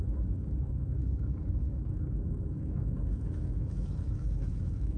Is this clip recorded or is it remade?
remade